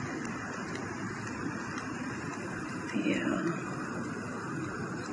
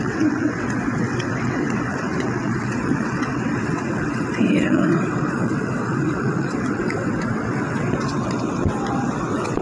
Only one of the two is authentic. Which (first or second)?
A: first